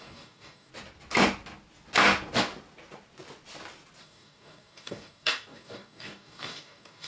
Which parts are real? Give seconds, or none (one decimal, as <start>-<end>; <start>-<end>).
0.7-4.0